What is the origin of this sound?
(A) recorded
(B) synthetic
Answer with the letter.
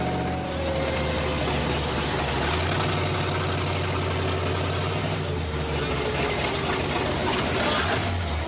A